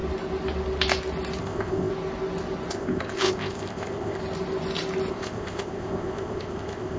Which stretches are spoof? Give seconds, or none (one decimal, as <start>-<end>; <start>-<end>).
1.4-1.9; 2.7-4.2; 5.1-7.0